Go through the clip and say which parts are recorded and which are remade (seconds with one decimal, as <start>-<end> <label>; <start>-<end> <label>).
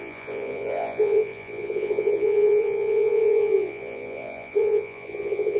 0.0-5.6 remade